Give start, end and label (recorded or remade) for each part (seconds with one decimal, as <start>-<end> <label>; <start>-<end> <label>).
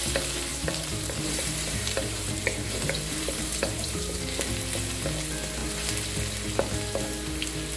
0.0-0.5 recorded; 0.5-4.2 remade; 4.2-7.8 recorded